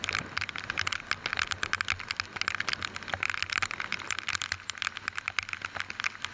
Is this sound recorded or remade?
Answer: recorded